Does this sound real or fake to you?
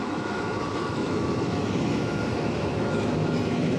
fake